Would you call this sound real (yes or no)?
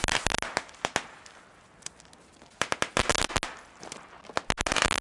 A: yes